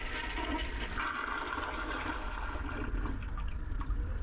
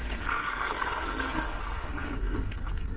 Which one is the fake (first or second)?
second